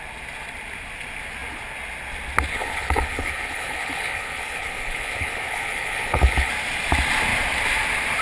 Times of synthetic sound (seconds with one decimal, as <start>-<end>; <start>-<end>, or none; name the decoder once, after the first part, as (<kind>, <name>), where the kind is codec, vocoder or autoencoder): 2.5-6.5 (codec, HILCodec)